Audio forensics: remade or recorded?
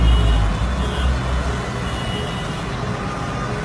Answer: recorded